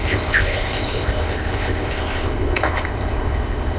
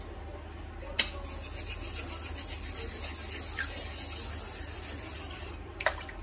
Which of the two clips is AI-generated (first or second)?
first